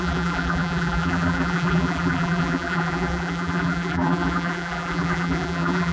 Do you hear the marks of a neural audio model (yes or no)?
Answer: yes